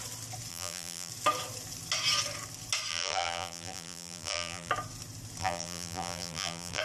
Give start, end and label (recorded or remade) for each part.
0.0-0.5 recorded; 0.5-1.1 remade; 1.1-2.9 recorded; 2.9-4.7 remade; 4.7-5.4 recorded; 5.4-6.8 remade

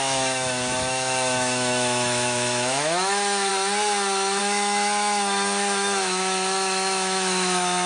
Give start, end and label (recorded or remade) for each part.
0.0-3.5 remade; 3.5-4.4 recorded; 4.4-7.9 remade

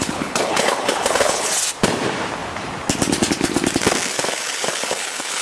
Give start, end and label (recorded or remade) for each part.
0.0-1.5 remade; 1.5-4.1 recorded; 4.1-5.4 remade

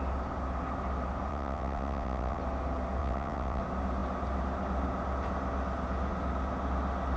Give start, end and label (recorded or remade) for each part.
0.0-1.3 recorded; 1.3-2.4 remade; 2.4-3.0 recorded; 3.0-3.6 remade; 3.6-7.2 recorded

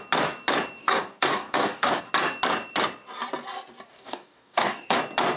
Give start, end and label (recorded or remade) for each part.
0.0-0.8 recorded; 0.8-2.0 remade; 2.0-3.9 recorded; 3.9-5.0 remade; 5.0-5.4 recorded